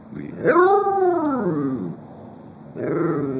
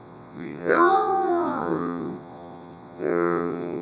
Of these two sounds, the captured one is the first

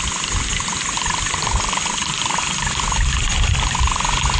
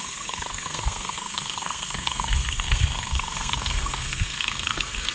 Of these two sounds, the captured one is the first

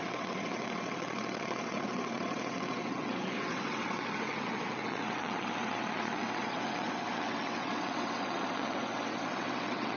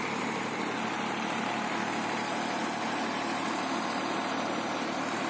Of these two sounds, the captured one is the second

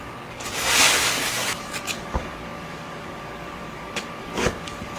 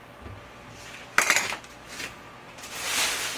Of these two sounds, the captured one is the second